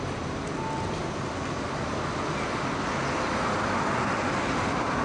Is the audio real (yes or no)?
yes